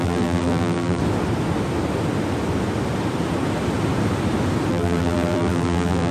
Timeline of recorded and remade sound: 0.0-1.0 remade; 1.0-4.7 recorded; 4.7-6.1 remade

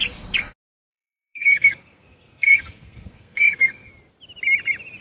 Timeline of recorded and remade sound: 0.0-0.9 recorded; 0.9-3.9 remade; 3.9-5.0 recorded